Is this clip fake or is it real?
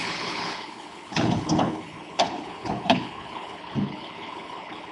fake